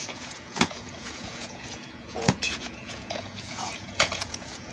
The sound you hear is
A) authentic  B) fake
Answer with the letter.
B